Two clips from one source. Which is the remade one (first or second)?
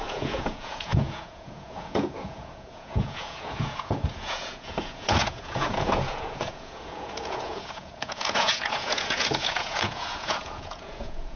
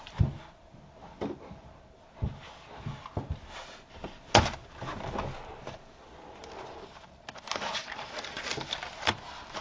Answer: first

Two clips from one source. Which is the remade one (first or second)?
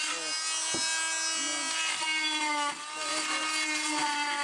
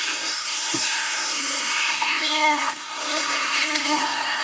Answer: second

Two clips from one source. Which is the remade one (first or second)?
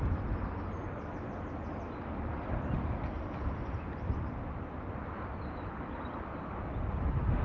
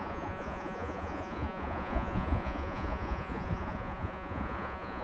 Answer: second